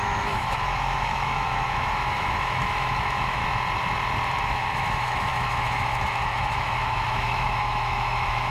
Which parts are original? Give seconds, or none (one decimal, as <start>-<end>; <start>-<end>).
3.4-4.4